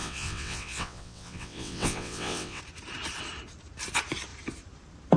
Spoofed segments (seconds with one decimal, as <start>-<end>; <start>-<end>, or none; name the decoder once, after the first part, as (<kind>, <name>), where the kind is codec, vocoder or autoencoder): 0.0-2.6 (vocoder, WaveNeXt)